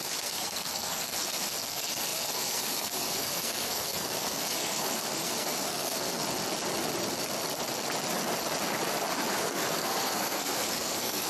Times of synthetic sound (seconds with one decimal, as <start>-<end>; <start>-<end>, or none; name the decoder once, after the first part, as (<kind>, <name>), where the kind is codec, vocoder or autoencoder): 0.0-6.2 (codec, SNAC); 9.3-11.3